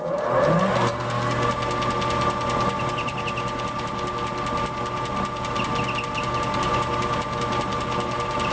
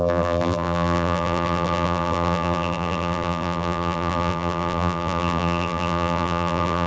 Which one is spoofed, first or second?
second